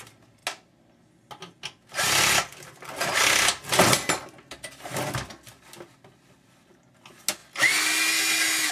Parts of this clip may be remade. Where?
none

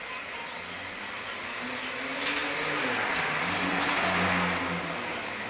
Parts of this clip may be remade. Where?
none

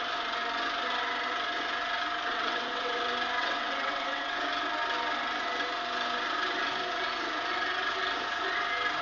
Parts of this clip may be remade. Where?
2.3-3.0; 3.4-4.4